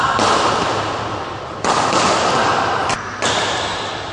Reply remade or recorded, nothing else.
recorded